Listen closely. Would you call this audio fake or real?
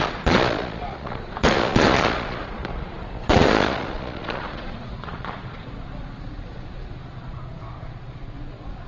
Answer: fake